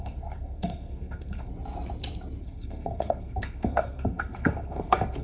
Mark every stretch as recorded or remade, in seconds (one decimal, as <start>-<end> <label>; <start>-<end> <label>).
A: 0.0-1.5 remade; 1.5-2.4 recorded; 2.4-5.2 remade